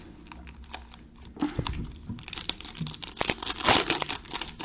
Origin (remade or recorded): recorded